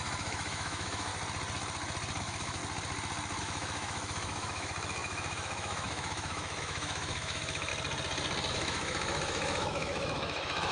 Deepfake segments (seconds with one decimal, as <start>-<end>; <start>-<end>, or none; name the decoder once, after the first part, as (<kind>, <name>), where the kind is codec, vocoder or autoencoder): 0.0-1.1 (autoencoder, DAC-VAE); 2.2-2.6; 3.4-7.7; 8.5-10.7